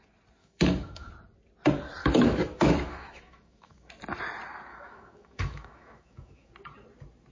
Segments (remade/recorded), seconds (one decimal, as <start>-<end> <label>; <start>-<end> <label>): 0.0-0.4 recorded; 0.4-1.1 remade; 1.1-2.0 recorded; 2.0-3.9 remade; 3.9-4.7 recorded; 4.7-6.5 remade; 6.5-7.3 recorded